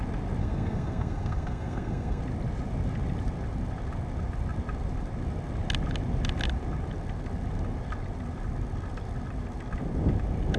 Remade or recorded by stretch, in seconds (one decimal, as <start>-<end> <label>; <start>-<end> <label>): 0.0-0.4 recorded; 0.4-2.2 remade; 2.2-10.6 recorded